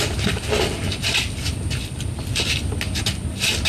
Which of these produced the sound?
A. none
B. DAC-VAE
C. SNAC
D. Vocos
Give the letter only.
A